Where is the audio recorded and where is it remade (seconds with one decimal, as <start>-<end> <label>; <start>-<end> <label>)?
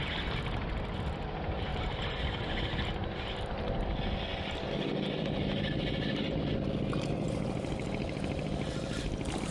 0.0-1.7 recorded; 1.7-2.2 remade; 2.2-9.5 recorded